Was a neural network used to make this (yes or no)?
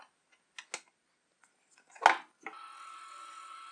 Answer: no